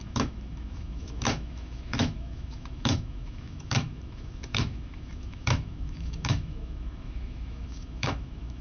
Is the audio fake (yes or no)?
yes